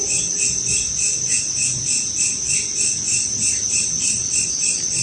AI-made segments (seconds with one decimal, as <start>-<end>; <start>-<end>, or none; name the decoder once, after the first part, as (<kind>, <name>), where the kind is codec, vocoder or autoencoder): none